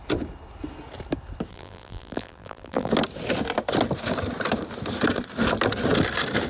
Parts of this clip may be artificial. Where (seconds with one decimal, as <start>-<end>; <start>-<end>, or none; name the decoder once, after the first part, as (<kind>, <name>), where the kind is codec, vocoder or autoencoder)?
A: 1.5-2.9 (vocoder, BigVGAN v2)